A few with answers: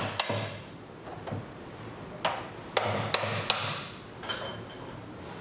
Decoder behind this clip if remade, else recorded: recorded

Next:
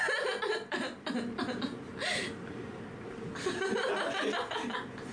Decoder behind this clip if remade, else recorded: recorded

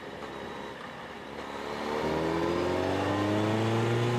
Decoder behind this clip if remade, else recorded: recorded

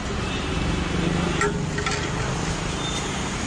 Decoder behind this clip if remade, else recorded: recorded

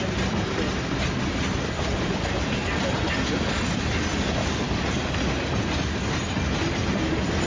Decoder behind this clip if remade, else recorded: recorded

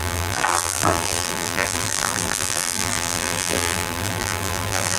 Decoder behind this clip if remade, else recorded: remade, vocoder, BigVGAN v2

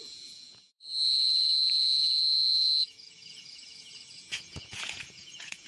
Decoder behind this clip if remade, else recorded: remade, vocoder, Vocos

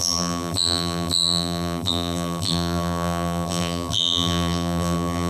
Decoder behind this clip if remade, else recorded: remade, vocoder, BigVGAN v2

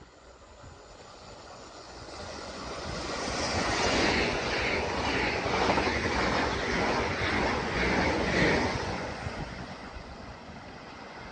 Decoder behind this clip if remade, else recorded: remade, vocoder, Vocos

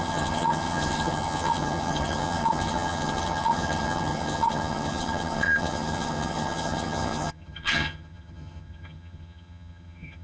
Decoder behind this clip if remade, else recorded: remade, vocoder, HiFi-GAN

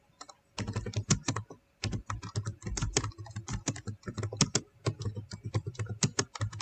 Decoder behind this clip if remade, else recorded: recorded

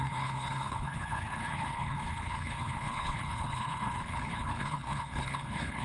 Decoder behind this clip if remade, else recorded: remade, codec, HILCodec